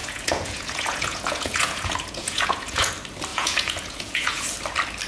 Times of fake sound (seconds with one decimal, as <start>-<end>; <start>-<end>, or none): 0.0-2.9; 3.3-4.4